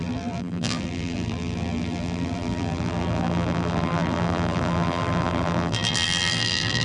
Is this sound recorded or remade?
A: remade